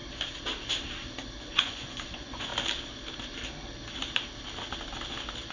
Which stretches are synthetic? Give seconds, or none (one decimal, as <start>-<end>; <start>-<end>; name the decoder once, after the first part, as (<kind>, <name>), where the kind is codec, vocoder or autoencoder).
1.4-2.5 (vocoder, Vocos)